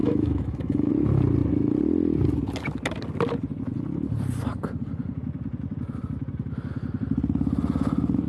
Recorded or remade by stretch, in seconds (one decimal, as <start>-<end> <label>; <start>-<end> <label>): 0.0-0.9 remade; 0.9-8.3 recorded